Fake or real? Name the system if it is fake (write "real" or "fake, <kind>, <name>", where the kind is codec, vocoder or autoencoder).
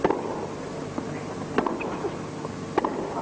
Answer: real